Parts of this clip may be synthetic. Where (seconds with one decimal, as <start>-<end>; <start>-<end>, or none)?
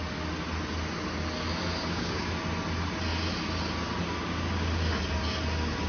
1.8-2.3